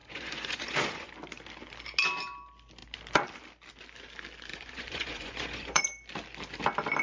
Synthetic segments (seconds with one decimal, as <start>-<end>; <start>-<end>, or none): 0.0-1.1; 4.5-5.8